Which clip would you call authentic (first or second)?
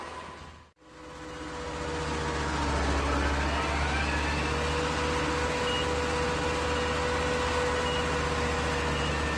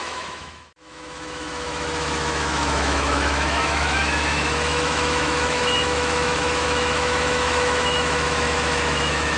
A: first